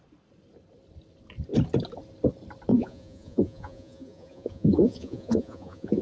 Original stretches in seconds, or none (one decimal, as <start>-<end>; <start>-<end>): 0.0-2.7